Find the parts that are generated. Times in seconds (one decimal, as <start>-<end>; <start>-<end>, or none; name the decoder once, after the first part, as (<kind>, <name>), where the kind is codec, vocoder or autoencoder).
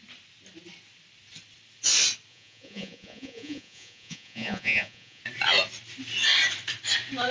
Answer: 2.3-5.2 (vocoder, Vocos)